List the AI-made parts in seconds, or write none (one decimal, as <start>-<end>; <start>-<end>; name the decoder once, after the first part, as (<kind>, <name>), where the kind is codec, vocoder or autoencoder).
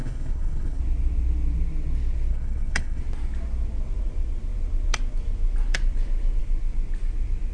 0.0-0.8 (codec, HILCodec); 2.3-3.0